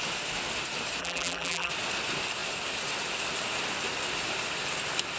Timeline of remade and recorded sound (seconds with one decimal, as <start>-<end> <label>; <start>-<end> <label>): 0.0-1.0 recorded; 1.0-1.7 remade; 1.7-5.2 recorded